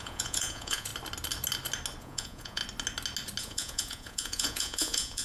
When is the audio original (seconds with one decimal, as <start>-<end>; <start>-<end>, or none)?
0.9-2.0; 2.6-3.4